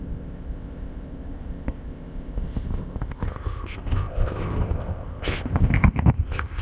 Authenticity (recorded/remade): remade